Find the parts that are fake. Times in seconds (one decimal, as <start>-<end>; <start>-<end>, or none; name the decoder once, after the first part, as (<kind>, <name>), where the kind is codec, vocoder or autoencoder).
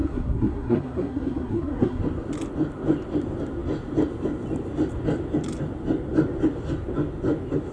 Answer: 0.0-2.0 (codec, SNAC)